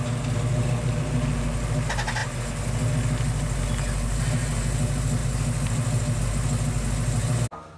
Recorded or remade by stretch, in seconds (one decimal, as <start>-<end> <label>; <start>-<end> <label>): 0.0-7.8 recorded